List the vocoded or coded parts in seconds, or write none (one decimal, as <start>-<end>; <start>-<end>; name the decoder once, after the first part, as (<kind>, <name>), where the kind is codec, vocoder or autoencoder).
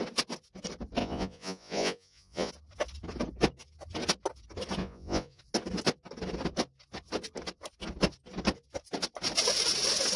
1.0-2.5 (vocoder, Vocos); 4.8-5.4